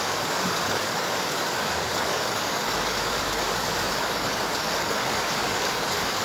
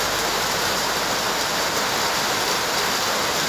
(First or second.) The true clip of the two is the second